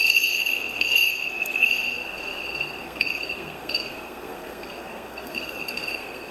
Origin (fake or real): fake